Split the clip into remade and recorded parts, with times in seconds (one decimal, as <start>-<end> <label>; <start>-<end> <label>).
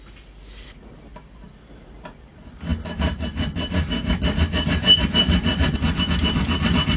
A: 0.0-7.0 recorded